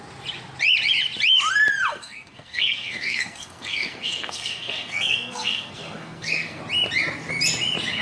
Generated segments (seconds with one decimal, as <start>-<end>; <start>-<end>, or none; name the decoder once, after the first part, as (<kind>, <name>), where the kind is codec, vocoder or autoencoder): 1.9-6.6 (codec, SNAC)